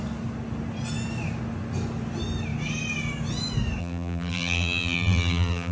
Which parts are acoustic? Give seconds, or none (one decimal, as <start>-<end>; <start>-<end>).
0.0-3.8